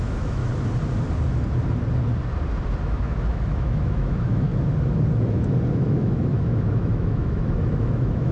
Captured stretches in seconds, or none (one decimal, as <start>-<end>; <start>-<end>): 0.4-2.8; 4.5-5.7